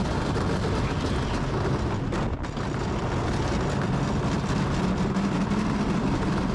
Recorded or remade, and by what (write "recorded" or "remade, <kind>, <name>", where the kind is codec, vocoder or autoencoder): recorded